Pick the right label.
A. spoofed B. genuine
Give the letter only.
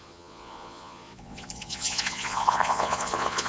A